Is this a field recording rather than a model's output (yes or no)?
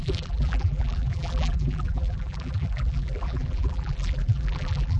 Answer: no